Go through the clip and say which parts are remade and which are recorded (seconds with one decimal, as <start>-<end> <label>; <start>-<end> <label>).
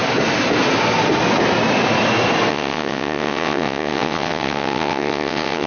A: 0.0-2.5 recorded; 2.5-5.7 remade